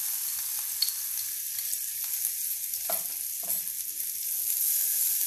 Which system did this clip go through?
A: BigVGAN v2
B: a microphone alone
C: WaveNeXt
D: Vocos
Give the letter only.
B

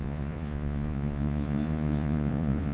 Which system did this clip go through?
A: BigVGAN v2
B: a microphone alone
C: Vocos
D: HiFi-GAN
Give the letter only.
C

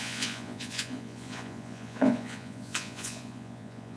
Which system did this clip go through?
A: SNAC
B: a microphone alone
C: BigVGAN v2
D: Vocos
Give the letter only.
D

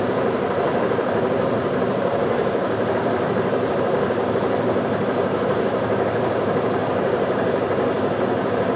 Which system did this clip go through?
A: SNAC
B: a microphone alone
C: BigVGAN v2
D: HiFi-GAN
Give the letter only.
C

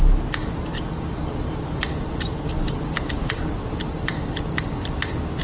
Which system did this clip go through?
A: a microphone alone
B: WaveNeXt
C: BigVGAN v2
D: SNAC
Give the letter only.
A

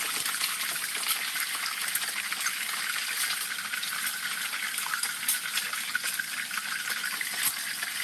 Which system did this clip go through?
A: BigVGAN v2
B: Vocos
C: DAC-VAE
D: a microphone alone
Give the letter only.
D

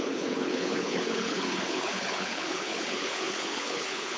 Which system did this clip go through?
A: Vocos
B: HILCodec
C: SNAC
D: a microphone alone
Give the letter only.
B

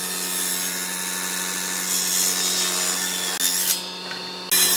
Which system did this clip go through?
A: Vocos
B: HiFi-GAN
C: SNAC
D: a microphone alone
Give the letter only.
D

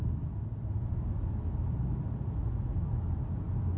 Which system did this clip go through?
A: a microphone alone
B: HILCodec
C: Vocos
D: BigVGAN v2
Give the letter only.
A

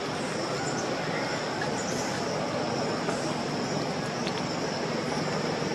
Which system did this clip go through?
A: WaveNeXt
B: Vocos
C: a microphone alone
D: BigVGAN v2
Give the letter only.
C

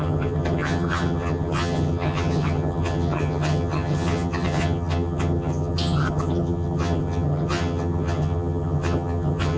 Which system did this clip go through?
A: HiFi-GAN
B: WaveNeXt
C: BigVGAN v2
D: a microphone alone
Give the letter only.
A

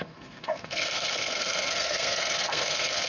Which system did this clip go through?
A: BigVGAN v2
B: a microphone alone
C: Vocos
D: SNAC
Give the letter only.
D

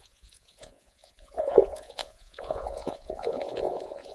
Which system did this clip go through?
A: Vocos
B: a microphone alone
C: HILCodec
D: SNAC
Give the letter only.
A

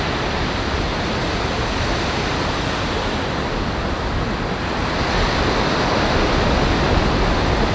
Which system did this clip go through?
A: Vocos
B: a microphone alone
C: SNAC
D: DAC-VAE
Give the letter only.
B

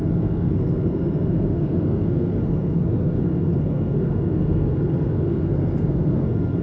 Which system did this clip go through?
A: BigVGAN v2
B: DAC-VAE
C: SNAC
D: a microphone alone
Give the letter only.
C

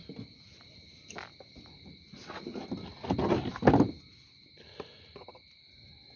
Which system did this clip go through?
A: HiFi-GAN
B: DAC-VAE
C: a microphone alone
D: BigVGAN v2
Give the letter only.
C